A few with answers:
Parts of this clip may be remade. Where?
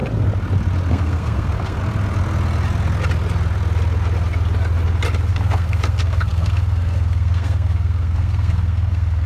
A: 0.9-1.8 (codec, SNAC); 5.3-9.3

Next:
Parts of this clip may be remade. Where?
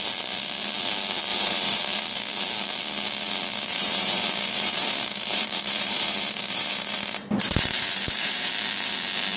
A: 1.3-2.0 (vocoder, BigVGAN v2); 3.7-8.5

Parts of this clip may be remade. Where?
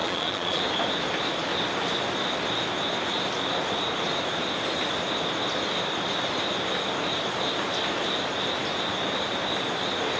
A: 0.0-0.6 (vocoder, Vocos)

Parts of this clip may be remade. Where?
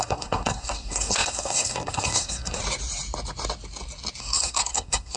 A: 0.0-2.6 (codec, SNAC); 4.2-5.2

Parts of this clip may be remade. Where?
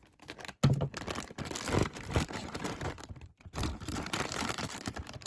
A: 1.8-5.3 (vocoder, BigVGAN v2)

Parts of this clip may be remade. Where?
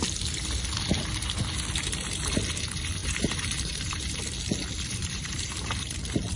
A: 3.0-4.1 (vocoder, BigVGAN v2); 5.0-6.0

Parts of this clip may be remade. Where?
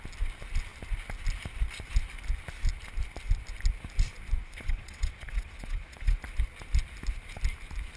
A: 4.4-6.2 (vocoder, WaveNeXt)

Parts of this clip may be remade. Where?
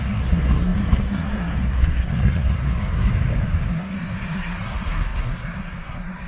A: 0.0-3.1 (codec, SNAC); 3.7-6.3